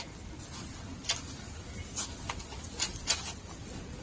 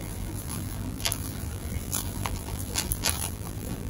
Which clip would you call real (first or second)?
first